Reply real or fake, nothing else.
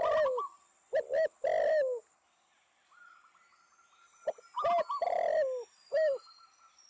real